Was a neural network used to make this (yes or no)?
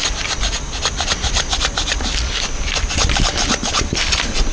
no